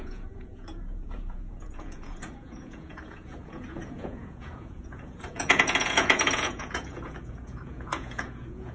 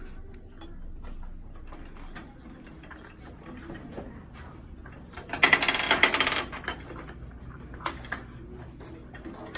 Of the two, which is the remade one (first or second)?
first